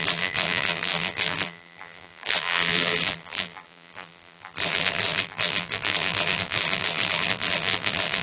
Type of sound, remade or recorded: remade